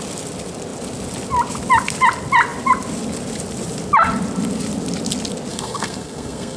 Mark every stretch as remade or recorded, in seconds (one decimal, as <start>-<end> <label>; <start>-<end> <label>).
0.0-5.5 recorded; 5.5-6.6 remade

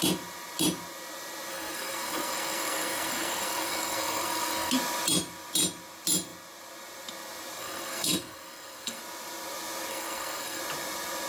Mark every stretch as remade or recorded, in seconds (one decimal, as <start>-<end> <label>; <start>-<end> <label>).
0.0-1.5 recorded; 1.5-4.7 remade; 4.7-7.6 recorded; 7.6-9.0 remade; 9.0-9.9 recorded; 9.9-10.6 remade; 10.6-11.3 recorded

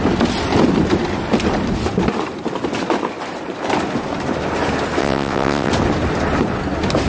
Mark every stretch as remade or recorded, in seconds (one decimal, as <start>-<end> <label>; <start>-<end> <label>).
0.0-5.0 recorded; 5.0-5.7 remade; 5.7-7.1 recorded

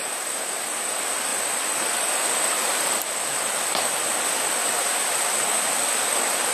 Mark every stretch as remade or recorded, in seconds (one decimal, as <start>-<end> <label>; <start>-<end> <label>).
0.0-1.3 recorded; 1.3-2.9 remade; 2.9-6.5 recorded

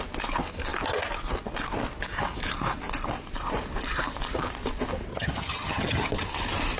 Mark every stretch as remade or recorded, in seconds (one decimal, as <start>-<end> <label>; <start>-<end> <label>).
0.0-5.1 recorded; 5.1-6.1 remade; 6.1-6.8 recorded